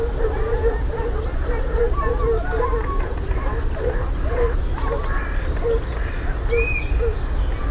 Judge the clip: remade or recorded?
recorded